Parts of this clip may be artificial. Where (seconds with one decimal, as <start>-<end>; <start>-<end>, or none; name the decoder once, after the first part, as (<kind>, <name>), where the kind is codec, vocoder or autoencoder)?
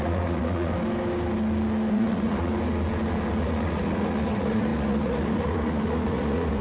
0.0-0.7 (vocoder, Vocos); 1.9-2.5; 3.4-6.6